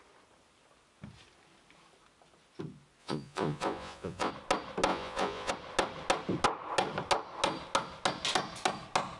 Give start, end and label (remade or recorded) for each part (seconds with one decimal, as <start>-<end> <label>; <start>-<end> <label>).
0.0-3.0 recorded; 3.0-4.3 remade; 4.3-4.9 recorded; 4.9-5.5 remade; 5.5-9.2 recorded